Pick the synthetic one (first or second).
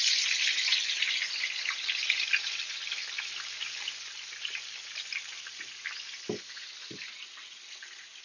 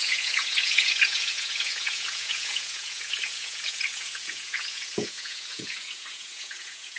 second